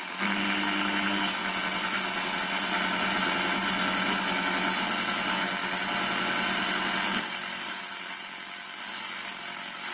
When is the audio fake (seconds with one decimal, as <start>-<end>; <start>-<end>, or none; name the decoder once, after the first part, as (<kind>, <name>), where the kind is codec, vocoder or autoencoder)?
none

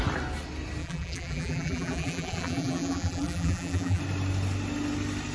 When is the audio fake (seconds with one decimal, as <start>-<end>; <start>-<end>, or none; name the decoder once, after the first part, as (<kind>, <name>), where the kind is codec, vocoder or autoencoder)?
0.8-4.0 (vocoder, BigVGAN v2)

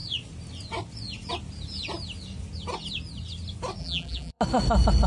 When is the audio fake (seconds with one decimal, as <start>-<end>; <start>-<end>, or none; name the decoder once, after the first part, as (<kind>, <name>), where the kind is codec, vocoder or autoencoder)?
3.8-4.4 (vocoder, BigVGAN v2)

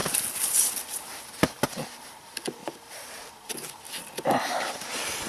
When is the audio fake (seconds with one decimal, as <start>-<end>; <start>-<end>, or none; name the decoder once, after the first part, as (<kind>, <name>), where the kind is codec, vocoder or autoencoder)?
none

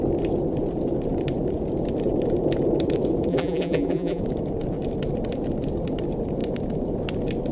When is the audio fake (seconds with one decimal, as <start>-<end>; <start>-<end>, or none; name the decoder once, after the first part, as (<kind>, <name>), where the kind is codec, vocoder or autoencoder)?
3.3-4.2 (vocoder, BigVGAN v2)

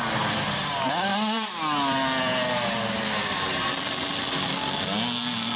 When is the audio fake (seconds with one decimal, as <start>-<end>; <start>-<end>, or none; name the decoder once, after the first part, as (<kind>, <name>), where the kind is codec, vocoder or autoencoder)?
none